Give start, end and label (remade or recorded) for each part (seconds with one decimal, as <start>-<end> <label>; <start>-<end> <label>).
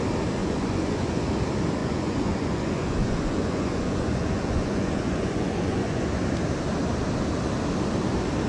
0.0-0.4 recorded; 0.4-1.2 remade; 1.2-1.8 recorded; 1.8-6.2 remade; 6.2-8.5 recorded